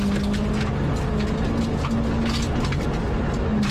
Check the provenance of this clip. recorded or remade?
recorded